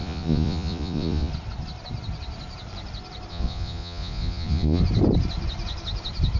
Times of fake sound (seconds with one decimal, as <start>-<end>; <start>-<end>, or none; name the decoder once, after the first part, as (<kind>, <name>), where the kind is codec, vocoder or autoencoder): 0.0-1.3 (vocoder, Vocos); 3.3-4.8